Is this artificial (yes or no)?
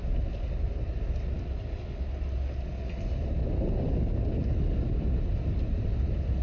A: no